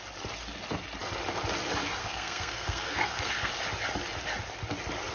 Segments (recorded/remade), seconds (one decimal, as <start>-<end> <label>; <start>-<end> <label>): 0.0-2.0 recorded; 2.0-3.5 remade; 3.5-5.1 recorded